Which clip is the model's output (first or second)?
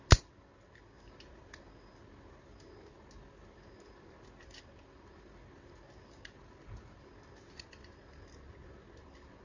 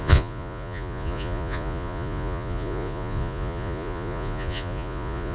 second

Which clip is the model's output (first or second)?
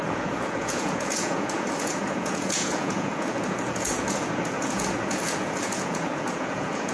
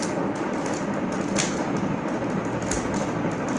first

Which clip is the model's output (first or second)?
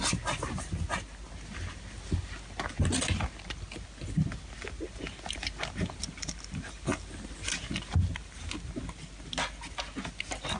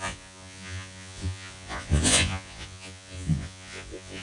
second